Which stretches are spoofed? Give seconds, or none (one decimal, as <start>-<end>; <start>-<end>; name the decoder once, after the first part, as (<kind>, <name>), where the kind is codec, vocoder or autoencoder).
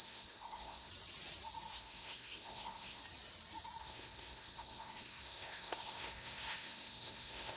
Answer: 0.0-0.9 (codec, SNAC); 1.7-3.0; 3.8-7.6